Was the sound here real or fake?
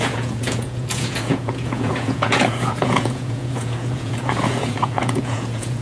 fake